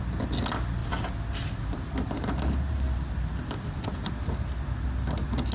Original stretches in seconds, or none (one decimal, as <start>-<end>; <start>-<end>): 0.0-5.5